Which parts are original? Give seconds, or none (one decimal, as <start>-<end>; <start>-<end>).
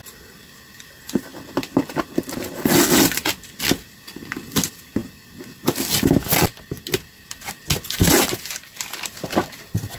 0.0-10.0